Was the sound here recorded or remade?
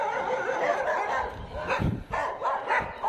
recorded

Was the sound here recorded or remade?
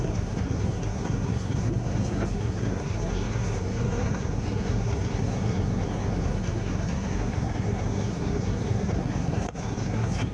remade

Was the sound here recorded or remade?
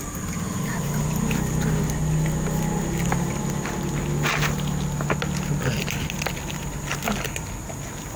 recorded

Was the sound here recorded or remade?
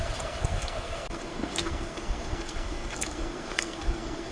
remade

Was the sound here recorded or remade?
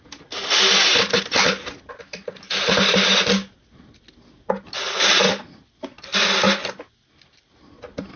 recorded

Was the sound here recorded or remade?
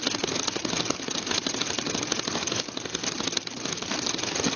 recorded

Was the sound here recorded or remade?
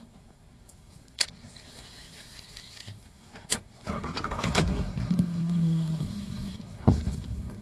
remade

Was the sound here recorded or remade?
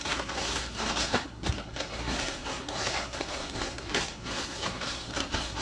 remade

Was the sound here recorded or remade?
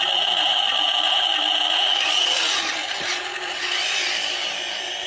recorded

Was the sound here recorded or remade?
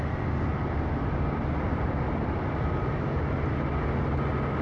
recorded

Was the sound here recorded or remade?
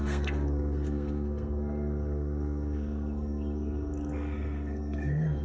remade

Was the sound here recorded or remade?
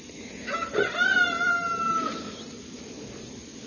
recorded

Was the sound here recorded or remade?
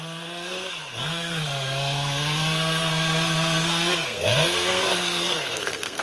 remade